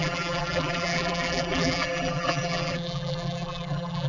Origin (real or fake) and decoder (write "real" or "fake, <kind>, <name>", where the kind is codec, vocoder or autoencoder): fake, vocoder, BigVGAN v2